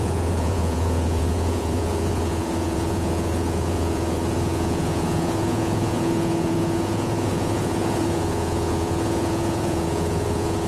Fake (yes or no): yes